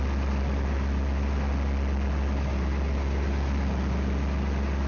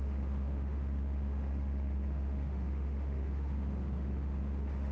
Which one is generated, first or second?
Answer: second